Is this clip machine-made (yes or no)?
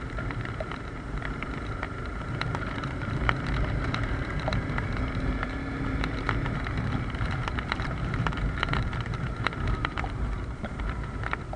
yes